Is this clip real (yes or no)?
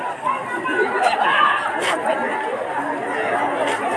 yes